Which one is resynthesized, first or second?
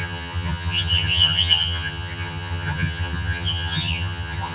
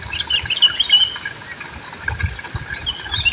first